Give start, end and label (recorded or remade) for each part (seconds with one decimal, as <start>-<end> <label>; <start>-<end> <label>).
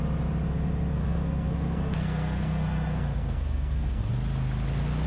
0.0-1.0 recorded; 1.0-4.1 remade; 4.1-5.1 recorded